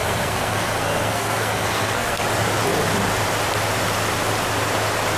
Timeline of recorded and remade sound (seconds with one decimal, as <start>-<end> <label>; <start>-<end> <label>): 0.0-2.2 remade; 2.2-5.2 recorded